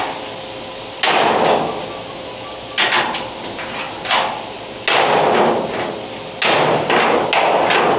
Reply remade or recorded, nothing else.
recorded